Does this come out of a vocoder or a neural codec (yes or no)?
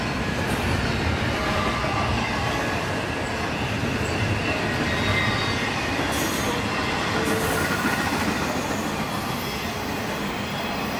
no